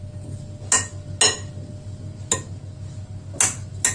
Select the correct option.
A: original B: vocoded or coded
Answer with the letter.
A